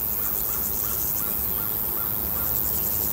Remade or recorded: recorded